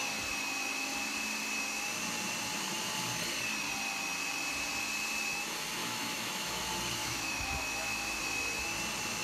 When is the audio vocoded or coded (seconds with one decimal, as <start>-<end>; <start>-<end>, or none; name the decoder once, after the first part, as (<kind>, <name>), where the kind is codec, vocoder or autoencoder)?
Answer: 5.8-6.6 (autoencoder, DAC-VAE); 7.0-8.2